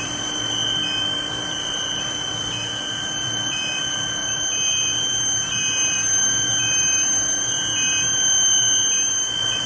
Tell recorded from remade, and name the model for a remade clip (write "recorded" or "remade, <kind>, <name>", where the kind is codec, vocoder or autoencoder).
remade, vocoder, BigVGAN v2